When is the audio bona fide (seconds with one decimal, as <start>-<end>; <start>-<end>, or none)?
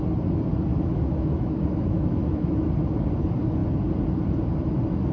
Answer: 0.0-0.7; 2.6-5.1